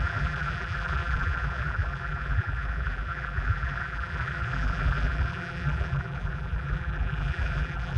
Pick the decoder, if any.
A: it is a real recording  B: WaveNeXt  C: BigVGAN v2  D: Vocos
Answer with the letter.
C